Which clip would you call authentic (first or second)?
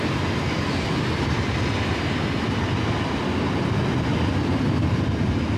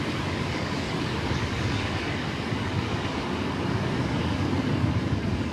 first